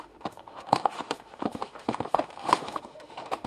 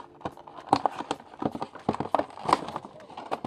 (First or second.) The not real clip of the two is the first